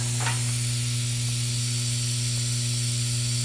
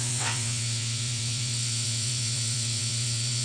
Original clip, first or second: first